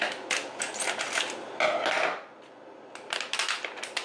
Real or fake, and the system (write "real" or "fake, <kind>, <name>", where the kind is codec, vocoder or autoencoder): real